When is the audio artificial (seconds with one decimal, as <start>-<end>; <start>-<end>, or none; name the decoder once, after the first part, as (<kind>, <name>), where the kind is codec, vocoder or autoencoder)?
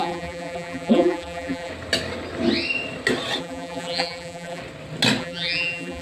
0.0-1.7 (vocoder, BigVGAN v2); 3.4-4.6; 5.2-6.0